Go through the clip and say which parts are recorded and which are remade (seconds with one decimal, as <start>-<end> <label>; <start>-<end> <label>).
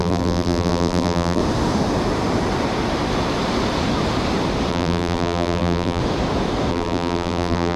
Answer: 0.0-1.4 remade; 1.4-4.7 recorded; 4.7-6.0 remade; 6.0-6.7 recorded; 6.7-7.8 remade